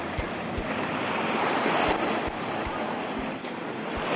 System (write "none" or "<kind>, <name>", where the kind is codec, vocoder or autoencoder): none